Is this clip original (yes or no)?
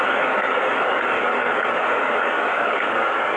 no